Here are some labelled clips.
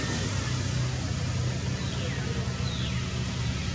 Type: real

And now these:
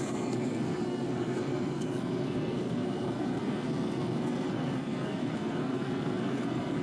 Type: fake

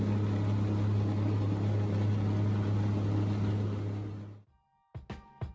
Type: real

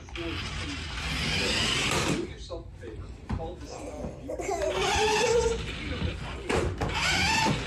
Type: real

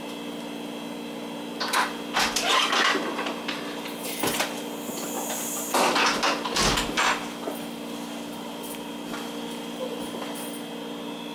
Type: real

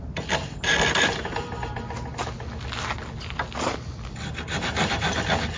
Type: real